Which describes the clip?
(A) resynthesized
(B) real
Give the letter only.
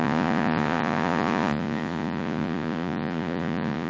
A